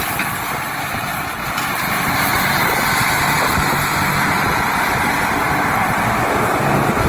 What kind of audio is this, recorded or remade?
recorded